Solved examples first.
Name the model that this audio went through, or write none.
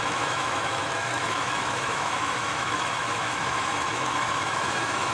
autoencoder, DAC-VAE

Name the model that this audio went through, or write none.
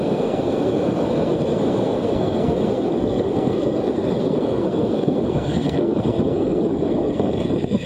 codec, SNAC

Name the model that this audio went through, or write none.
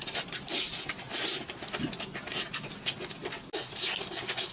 none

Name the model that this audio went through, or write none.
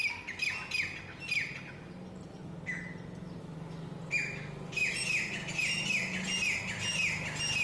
none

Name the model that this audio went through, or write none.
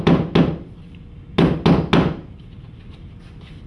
none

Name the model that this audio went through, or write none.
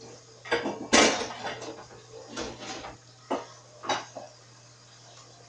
none